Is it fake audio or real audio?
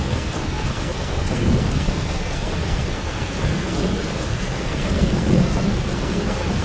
fake